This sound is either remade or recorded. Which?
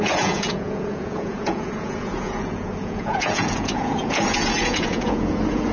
remade